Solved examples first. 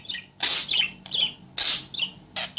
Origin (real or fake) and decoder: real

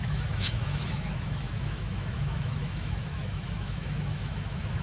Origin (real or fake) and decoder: fake, autoencoder, DAC-VAE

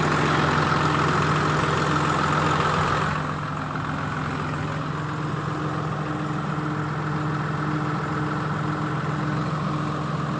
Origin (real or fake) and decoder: real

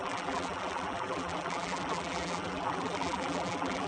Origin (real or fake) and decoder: fake, vocoder, BigVGAN v2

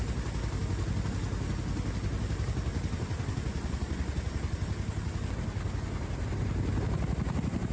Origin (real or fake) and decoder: real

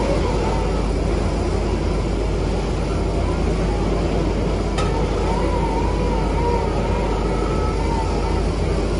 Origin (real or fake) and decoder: real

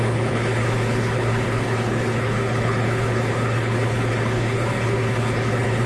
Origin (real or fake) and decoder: fake, codec, HILCodec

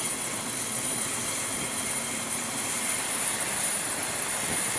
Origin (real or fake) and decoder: real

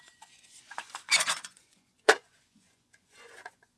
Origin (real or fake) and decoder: fake, vocoder, Vocos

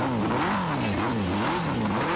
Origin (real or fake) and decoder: real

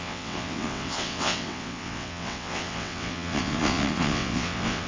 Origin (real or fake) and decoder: fake, vocoder, WaveNeXt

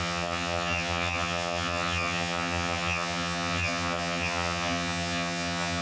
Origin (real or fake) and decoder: fake, vocoder, HiFi-GAN